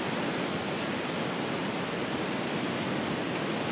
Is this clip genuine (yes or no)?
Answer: yes